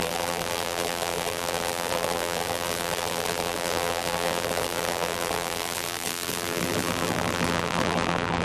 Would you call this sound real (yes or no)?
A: no